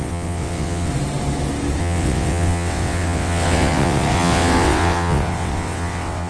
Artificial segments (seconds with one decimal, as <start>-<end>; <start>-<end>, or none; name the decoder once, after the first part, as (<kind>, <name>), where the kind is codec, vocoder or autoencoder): 0.0-0.9 (vocoder, WaveNeXt); 1.8-6.3